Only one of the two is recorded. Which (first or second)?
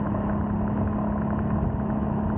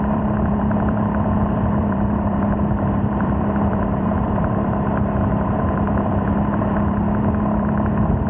first